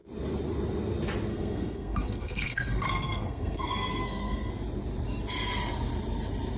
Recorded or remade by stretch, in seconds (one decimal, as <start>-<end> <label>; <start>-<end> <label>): 0.0-1.3 recorded; 1.3-4.5 remade; 4.5-6.6 recorded